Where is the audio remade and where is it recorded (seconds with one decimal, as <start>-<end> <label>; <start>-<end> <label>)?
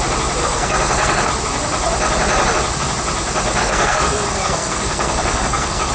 0.0-0.4 recorded; 0.4-1.3 remade; 1.3-3.6 recorded; 3.6-5.9 remade